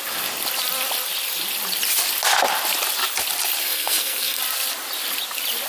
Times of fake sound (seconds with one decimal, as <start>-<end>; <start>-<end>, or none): 3.6-4.4